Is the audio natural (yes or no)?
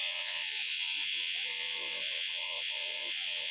no